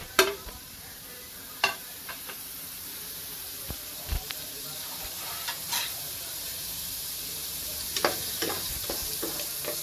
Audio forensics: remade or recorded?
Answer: remade